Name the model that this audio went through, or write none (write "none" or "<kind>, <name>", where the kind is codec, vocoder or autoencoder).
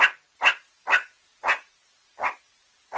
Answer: none